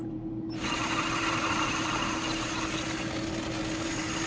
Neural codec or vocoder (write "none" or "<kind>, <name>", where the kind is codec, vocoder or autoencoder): none